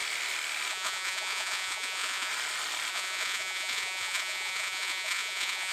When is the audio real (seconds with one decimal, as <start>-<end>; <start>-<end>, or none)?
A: 0.0-0.7; 2.3-2.9